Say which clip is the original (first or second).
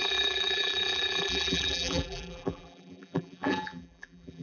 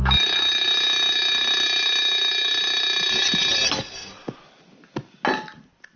second